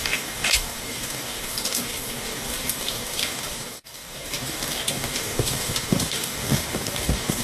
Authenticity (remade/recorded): remade